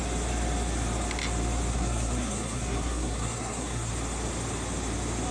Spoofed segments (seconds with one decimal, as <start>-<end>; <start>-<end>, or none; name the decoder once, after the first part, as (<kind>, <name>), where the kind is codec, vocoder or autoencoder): 1.7-3.9 (codec, SNAC)